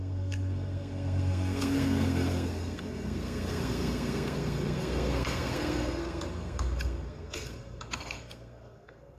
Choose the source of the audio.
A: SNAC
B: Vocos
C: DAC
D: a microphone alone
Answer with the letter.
A